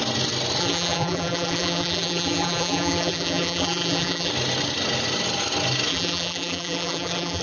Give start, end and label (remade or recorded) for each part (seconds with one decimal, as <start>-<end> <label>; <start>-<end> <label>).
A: 0.0-0.6 recorded; 0.6-4.3 remade; 4.3-5.9 recorded; 5.9-7.4 remade